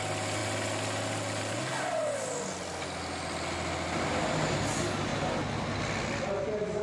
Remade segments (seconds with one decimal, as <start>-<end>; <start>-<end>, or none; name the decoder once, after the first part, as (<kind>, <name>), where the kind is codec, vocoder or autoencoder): none